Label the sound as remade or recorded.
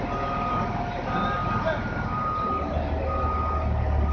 recorded